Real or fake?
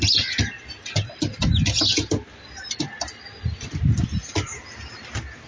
real